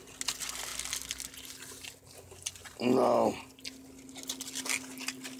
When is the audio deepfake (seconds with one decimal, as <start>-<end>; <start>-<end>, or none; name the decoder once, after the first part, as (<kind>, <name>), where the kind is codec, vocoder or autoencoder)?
none